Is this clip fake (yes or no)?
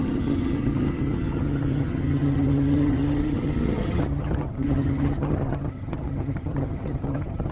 yes